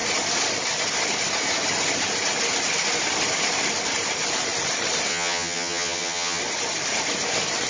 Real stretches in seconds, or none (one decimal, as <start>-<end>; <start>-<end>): 0.0-5.1; 6.4-7.7